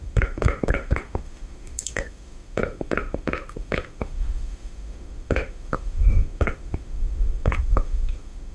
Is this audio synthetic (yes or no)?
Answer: yes